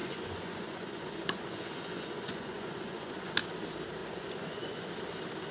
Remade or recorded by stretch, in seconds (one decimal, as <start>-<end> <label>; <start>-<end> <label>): 0.0-3.3 remade; 3.3-4.0 recorded; 4.0-4.9 remade; 4.9-5.5 recorded